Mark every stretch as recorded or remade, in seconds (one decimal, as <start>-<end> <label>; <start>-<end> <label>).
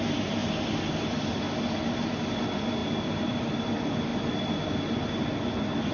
0.0-5.9 recorded